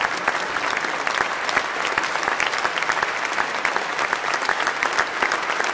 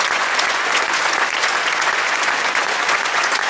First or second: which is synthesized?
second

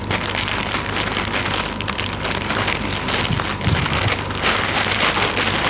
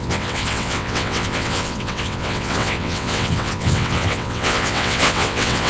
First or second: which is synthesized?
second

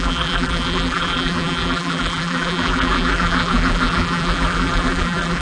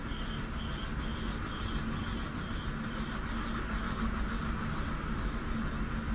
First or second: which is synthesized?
first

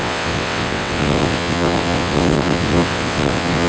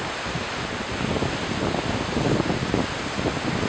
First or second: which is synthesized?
first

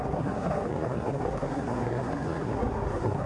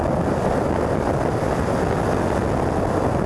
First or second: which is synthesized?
first